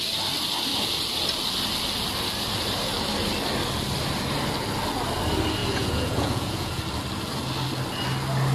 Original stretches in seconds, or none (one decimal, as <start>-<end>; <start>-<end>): 0.0-5.6; 6.8-8.5